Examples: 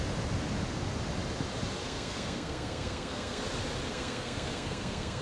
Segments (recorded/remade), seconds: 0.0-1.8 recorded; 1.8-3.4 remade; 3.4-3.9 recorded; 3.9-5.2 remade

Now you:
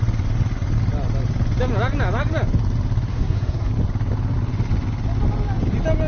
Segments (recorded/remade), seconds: 0.0-3.1 recorded; 3.1-3.7 remade; 3.7-6.1 recorded

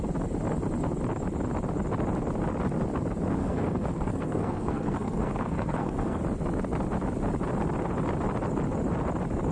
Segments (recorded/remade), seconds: 0.0-3.4 recorded; 3.4-6.2 remade; 6.2-9.5 recorded

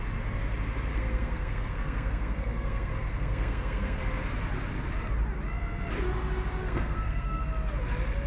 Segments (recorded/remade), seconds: 0.0-0.9 recorded; 0.9-4.0 remade; 4.0-6.6 recorded; 6.6-7.4 remade; 7.4-8.3 recorded

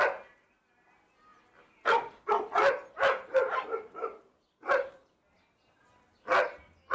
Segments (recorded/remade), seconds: 0.0-6.9 recorded